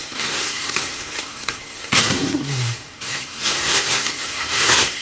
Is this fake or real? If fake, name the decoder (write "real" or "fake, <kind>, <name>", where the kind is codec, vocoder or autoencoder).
fake, codec, SNAC